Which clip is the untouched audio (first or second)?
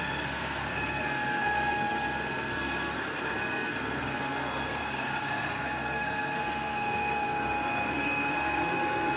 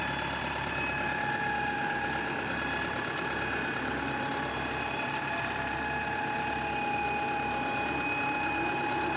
second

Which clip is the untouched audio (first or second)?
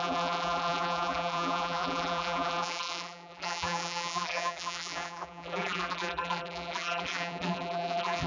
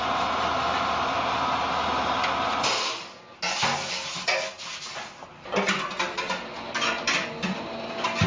second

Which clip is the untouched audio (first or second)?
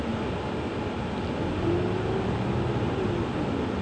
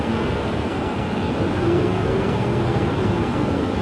first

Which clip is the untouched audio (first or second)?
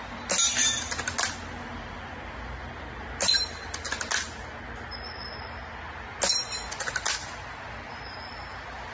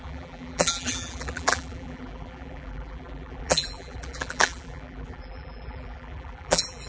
first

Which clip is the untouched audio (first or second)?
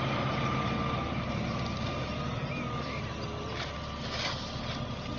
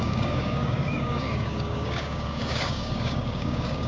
first